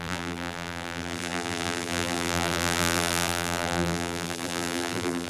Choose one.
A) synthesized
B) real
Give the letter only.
A